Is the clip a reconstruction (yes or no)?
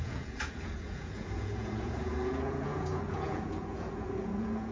yes